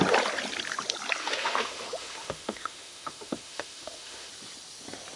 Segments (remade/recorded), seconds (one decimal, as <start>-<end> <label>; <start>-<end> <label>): 0.0-1.2 recorded; 1.2-4.3 remade; 4.3-5.2 recorded